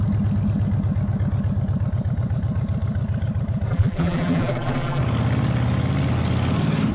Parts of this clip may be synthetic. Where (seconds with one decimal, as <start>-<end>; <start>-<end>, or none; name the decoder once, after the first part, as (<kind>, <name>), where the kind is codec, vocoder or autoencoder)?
3.7-5.0 (vocoder, BigVGAN v2)